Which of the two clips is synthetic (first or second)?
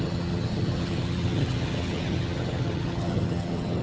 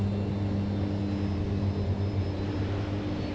first